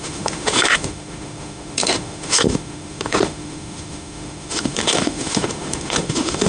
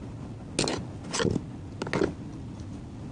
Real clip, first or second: second